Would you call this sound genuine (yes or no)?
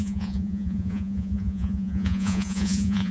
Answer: no